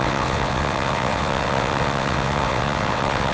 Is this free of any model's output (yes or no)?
no